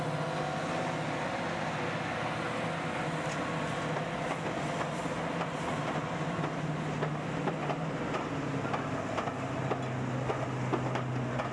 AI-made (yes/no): no